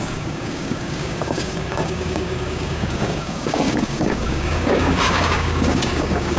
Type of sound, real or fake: fake